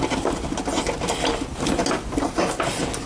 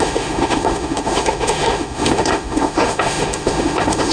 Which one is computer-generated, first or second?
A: second